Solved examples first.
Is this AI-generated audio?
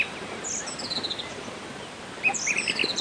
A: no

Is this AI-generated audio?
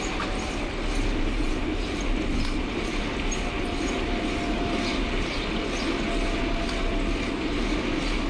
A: no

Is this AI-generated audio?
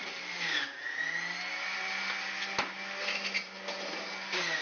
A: no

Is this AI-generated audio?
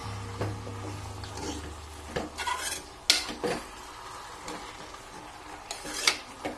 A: no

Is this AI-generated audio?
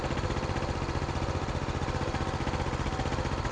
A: no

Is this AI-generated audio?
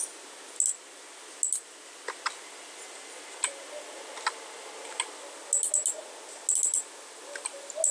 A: no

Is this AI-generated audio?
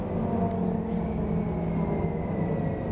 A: no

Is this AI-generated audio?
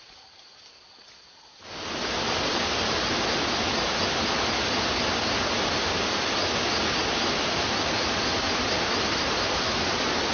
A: no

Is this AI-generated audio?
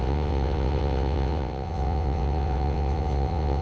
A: yes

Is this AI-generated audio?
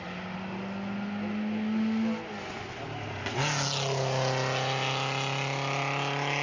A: no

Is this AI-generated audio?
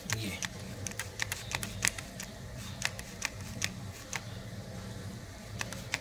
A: no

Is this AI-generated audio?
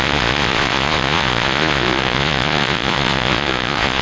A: yes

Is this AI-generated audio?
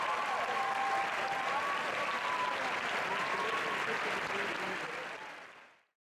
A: no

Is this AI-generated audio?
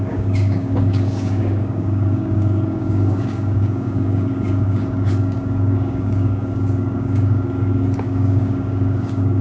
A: yes